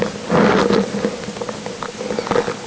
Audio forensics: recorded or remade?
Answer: recorded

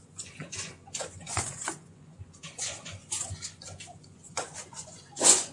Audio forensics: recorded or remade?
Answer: remade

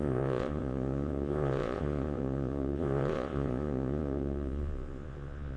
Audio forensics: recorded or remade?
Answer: remade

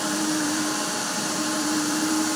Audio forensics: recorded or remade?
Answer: remade